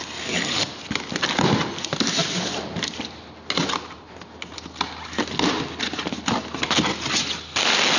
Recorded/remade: recorded